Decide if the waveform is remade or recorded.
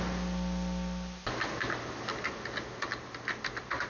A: recorded